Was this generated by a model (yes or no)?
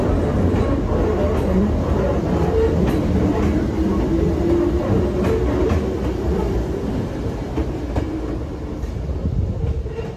no